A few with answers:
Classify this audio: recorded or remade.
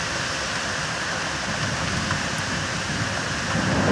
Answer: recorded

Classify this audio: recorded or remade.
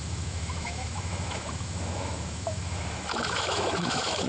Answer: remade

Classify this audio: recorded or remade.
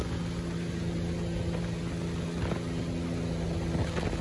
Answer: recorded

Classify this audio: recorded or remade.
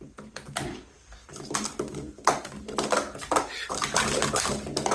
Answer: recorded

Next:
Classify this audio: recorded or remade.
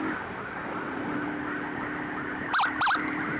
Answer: recorded